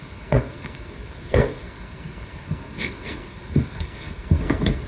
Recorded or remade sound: remade